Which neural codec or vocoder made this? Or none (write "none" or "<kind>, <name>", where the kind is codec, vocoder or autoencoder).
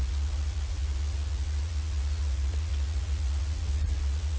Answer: vocoder, Vocos